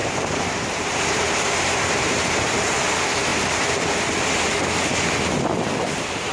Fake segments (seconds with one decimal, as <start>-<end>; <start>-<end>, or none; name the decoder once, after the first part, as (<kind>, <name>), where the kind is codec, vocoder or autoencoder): 0.0-2.8 (vocoder, BigVGAN v2)

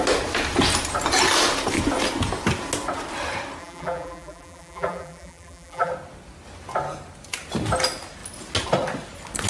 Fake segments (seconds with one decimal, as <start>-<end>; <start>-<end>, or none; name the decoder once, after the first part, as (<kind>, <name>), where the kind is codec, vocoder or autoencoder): 3.6-5.9 (vocoder, BigVGAN v2)

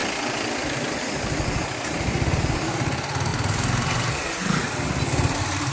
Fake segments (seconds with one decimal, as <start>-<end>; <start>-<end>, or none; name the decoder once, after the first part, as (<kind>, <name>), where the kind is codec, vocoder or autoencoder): 0.0-1.0 (vocoder, BigVGAN v2); 3.3-4.1

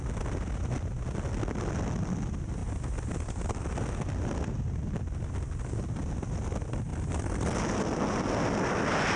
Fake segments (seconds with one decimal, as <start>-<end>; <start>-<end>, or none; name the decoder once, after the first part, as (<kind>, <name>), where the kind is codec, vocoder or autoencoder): 2.6-5.7 (vocoder, BigVGAN v2)

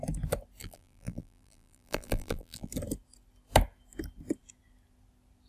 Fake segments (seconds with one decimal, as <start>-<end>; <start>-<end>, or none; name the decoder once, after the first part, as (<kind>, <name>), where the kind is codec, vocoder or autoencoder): 0.6-2.7 (vocoder, BigVGAN v2)

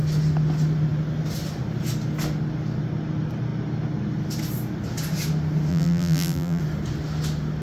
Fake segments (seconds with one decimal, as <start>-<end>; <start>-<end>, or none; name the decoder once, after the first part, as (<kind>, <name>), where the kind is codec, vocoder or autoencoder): 5.7-6.6 (vocoder, BigVGAN v2)

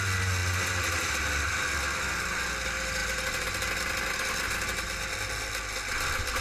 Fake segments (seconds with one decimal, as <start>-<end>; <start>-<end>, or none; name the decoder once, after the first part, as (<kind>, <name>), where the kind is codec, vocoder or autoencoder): none